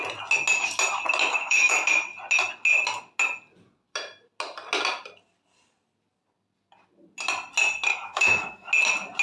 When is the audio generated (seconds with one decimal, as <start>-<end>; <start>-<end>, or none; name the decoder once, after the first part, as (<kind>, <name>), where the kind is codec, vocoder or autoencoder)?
1.4-1.9 (autoencoder, DAC-VAE); 7.9-8.7